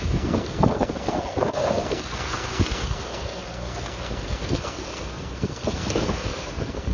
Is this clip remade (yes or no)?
yes